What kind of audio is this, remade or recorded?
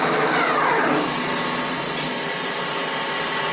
recorded